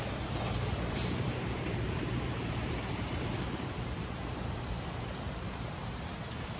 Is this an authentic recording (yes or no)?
no